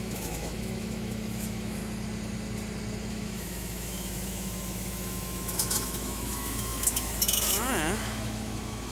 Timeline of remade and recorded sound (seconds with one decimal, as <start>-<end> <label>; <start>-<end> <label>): 0.0-1.8 remade; 1.8-3.1 recorded; 3.1-8.9 remade